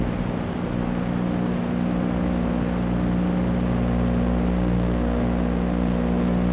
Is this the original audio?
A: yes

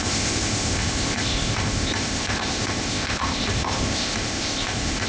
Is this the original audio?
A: no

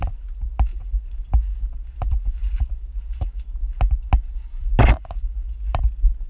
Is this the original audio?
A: yes